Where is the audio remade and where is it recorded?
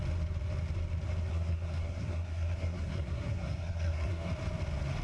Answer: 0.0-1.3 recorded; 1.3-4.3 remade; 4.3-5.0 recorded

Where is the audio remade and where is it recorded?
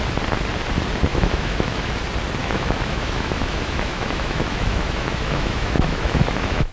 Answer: 0.0-1.1 recorded; 1.1-1.9 remade; 1.9-2.4 recorded; 2.4-6.7 remade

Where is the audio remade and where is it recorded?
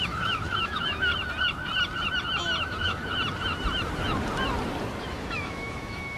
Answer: 0.0-1.1 remade; 1.1-2.6 recorded; 2.6-3.0 remade; 3.0-5.0 recorded; 5.0-6.2 remade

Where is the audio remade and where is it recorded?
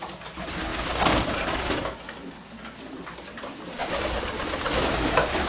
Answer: 0.0-5.5 recorded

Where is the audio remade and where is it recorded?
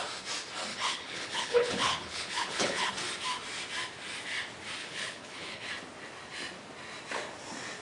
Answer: 0.0-0.7 recorded; 0.7-2.9 remade; 2.9-4.8 recorded; 4.8-5.7 remade; 5.7-7.8 recorded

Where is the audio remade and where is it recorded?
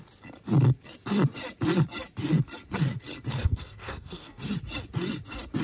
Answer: 0.0-3.3 recorded; 3.3-4.4 remade; 4.4-5.6 recorded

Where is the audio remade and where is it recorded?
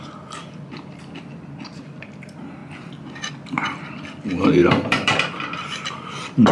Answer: 0.0-4.6 recorded; 4.6-5.4 remade; 5.4-6.5 recorded